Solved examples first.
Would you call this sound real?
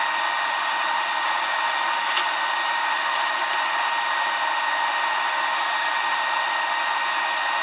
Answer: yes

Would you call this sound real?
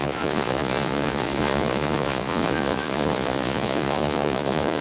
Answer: no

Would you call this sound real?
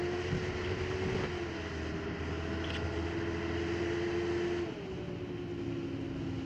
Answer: yes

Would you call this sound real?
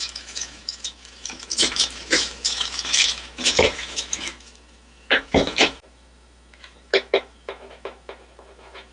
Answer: no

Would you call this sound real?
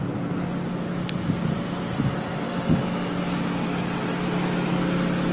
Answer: yes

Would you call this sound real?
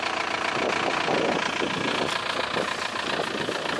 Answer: yes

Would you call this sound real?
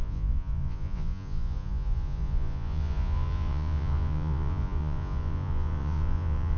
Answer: no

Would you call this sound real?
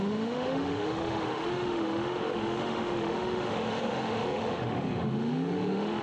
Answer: no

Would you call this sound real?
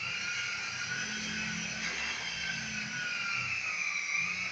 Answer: yes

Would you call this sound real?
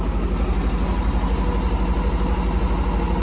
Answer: yes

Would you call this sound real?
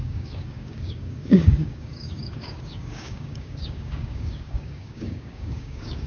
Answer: no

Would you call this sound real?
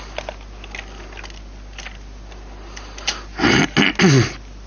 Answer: yes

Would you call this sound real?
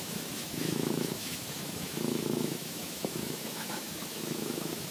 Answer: no